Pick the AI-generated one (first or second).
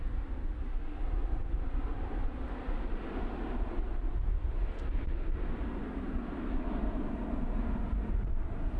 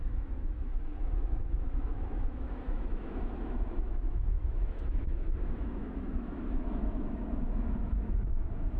second